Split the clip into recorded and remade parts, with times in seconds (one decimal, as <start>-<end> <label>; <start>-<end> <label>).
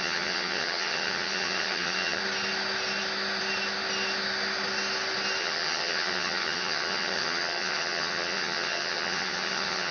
0.0-2.2 remade; 2.2-5.4 recorded; 5.4-9.9 remade